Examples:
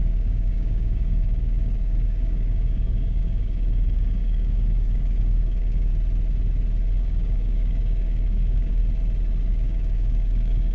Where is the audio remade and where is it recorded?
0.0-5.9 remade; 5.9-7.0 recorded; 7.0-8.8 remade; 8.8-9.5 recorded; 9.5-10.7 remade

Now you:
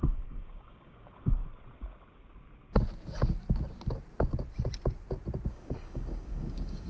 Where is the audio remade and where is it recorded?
0.0-1.4 remade; 1.4-5.5 recorded; 5.5-6.9 remade

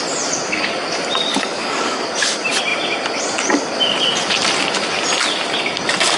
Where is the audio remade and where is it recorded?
0.0-1.3 recorded; 1.3-2.1 remade; 2.1-6.2 recorded